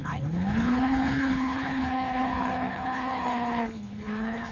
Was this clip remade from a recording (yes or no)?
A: yes